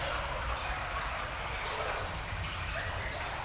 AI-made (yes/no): no